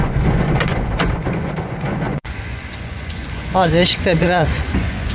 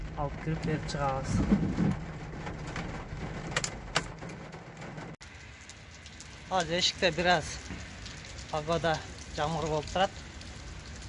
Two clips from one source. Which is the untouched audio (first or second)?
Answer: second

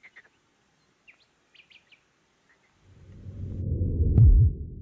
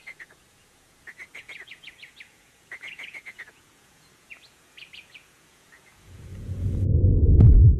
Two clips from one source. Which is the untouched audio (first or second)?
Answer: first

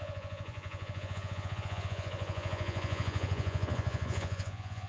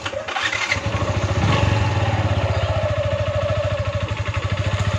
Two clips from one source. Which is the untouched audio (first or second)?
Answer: second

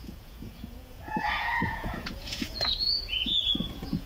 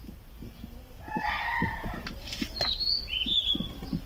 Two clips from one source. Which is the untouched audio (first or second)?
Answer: second